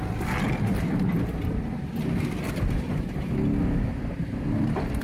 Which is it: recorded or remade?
remade